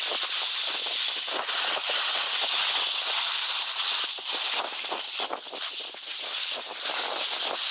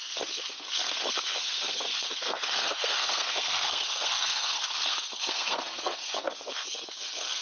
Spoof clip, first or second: second